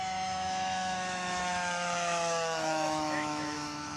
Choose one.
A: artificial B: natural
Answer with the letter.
A